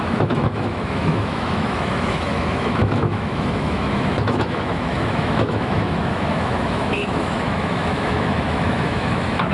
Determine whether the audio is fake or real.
fake